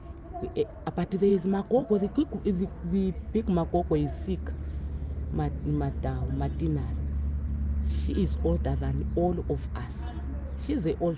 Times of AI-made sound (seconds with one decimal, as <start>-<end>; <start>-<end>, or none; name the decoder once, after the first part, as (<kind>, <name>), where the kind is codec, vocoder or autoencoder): none